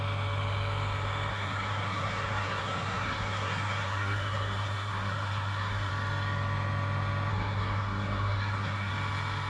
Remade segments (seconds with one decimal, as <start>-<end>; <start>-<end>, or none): 1.3-5.9; 7.3-8.9